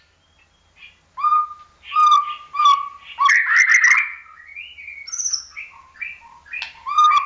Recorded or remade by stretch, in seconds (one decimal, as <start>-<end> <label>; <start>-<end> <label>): 0.0-7.3 recorded